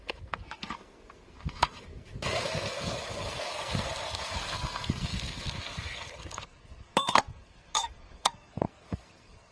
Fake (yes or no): yes